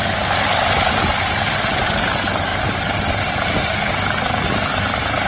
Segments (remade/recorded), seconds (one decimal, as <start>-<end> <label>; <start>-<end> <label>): 0.0-0.8 remade; 0.8-2.5 recorded; 2.5-3.5 remade; 3.5-5.3 recorded